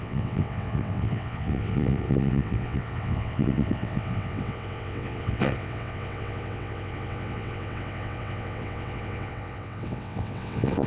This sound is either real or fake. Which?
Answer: fake